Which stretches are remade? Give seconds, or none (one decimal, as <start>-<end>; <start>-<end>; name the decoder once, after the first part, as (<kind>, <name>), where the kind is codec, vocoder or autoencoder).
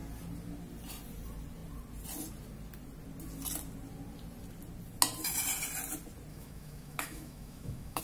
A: 6.3-8.0 (autoencoder, DAC-VAE)